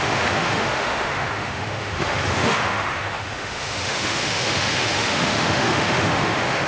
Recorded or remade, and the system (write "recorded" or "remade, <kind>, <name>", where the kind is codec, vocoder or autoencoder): remade, autoencoder, DAC-VAE